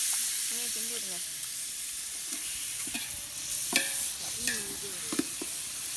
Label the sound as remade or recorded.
remade